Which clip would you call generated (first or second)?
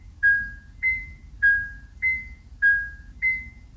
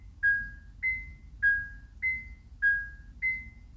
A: first